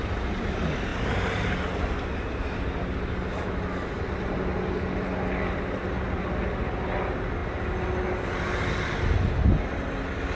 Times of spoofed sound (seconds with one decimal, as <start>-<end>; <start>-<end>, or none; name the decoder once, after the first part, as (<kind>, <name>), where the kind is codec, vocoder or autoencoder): none